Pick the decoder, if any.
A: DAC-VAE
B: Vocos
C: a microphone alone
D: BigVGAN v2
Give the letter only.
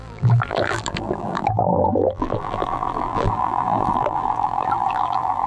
D